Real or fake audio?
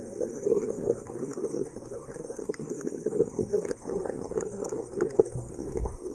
fake